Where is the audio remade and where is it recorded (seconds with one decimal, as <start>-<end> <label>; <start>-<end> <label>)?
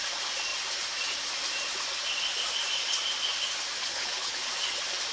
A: 0.0-3.9 recorded; 3.9-4.5 remade; 4.5-5.1 recorded